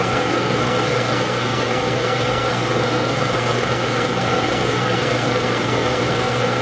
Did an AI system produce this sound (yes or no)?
yes